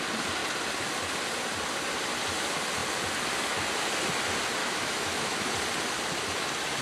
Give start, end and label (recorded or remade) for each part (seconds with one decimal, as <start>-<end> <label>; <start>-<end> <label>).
0.0-4.6 recorded; 4.6-5.5 remade; 5.5-6.8 recorded